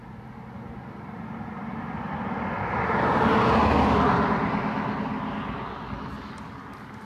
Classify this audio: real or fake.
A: real